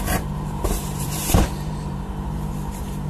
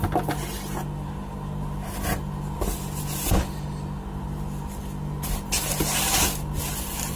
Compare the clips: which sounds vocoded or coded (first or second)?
first